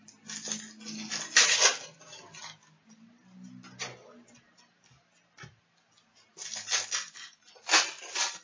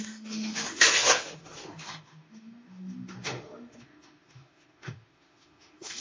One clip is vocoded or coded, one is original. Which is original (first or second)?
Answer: first